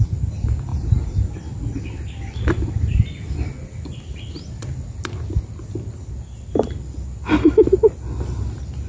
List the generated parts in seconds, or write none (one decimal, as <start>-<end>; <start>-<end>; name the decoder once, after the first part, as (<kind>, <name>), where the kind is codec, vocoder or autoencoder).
0.7-1.2 (vocoder, BigVGAN v2)